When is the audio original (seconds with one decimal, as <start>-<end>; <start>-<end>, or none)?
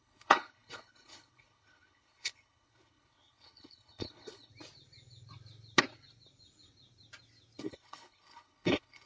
4.5-7.6